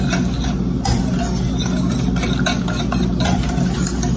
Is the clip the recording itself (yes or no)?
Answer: yes